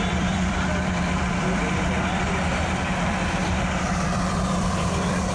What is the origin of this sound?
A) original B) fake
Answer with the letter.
B